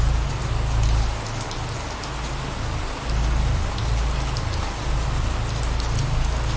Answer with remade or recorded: recorded